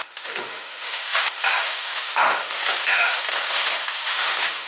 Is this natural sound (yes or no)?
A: no